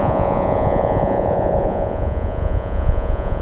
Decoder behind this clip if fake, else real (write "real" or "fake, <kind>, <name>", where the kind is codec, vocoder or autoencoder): fake, vocoder, Vocos